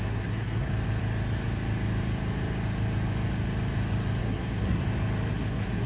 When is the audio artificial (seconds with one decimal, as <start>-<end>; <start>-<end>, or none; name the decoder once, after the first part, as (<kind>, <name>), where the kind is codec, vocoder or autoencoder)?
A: 0.0-0.7 (codec, SNAC); 4.2-4.8; 5.3-5.9